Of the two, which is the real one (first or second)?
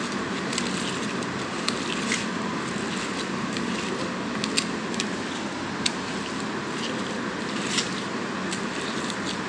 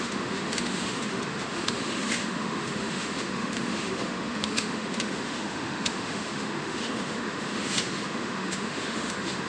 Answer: first